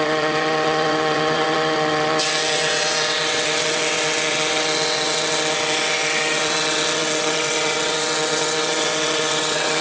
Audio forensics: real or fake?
fake